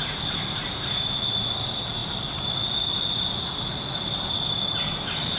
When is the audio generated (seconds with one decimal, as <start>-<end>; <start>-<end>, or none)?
none